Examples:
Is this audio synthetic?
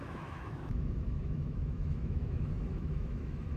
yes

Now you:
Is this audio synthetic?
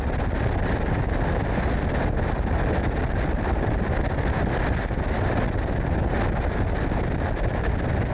no